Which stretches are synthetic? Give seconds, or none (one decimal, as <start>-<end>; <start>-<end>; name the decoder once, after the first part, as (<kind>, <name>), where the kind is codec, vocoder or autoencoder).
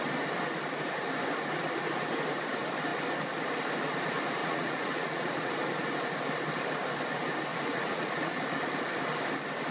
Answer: 4.4-5.5 (vocoder, Vocos); 7.5-8.4